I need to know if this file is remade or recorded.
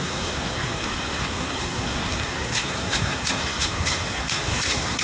remade